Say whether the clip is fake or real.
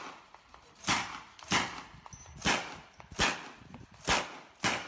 real